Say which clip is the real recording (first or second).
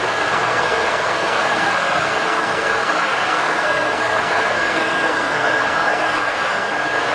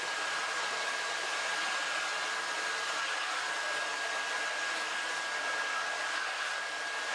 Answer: second